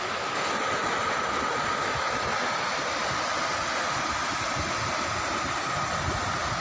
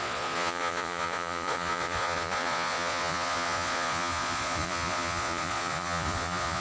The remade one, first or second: second